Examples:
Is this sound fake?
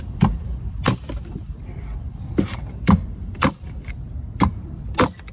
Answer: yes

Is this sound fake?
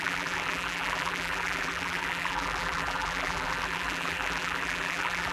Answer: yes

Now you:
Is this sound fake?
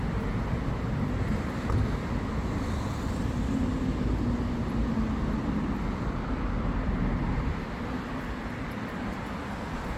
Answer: no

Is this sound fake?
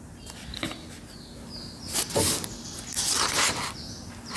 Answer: no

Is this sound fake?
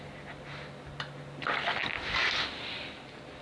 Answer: no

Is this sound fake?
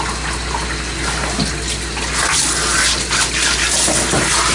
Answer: no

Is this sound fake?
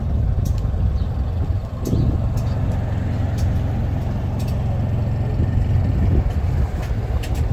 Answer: no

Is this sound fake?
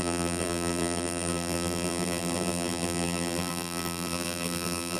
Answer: yes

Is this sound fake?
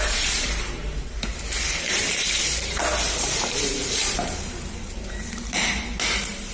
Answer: yes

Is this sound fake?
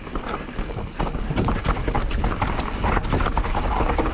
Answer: no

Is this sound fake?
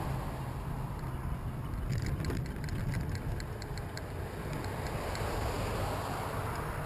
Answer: no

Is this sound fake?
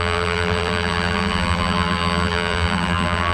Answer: yes